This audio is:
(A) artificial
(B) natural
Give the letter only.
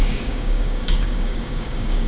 A